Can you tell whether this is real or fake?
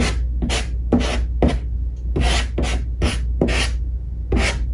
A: real